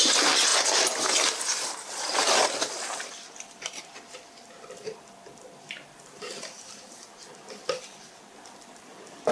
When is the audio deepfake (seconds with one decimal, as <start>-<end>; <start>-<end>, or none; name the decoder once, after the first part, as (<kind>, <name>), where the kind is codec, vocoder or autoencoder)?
none